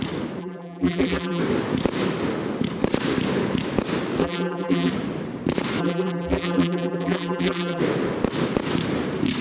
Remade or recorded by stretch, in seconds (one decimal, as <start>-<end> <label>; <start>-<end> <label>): 0.0-0.4 recorded; 0.4-1.4 remade; 1.4-4.2 recorded; 4.2-4.9 remade; 4.9-5.8 recorded; 5.8-7.8 remade; 7.8-9.4 recorded